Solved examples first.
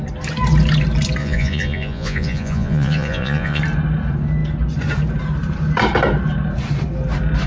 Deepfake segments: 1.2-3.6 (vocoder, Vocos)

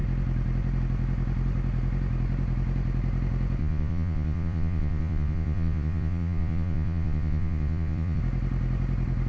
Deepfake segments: 3.6-8.2 (vocoder, Vocos)

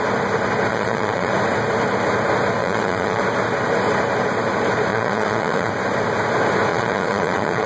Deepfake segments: 0.7-1.3 (vocoder, Vocos); 2.6-3.2; 4.9-5.7; 6.7-7.7

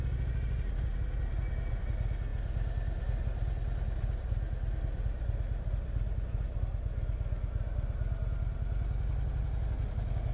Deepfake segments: none